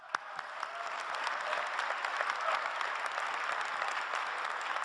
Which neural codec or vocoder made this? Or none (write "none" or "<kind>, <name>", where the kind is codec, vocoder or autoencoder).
none